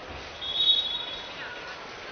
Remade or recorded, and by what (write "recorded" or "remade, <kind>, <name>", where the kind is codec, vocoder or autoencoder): recorded